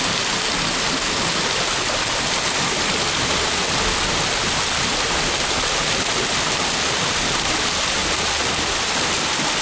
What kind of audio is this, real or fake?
real